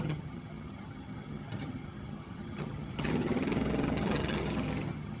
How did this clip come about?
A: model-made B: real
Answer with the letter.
A